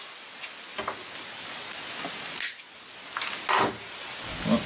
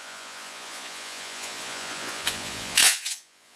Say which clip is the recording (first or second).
first